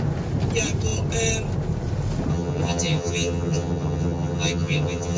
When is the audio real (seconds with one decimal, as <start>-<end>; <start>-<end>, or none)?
0.0-2.3